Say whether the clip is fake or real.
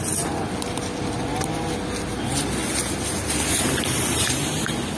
real